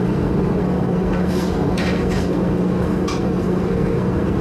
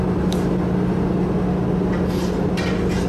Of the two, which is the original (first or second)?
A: second